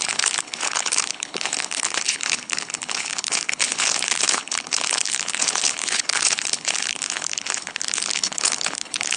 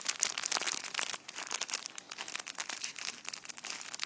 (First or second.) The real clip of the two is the second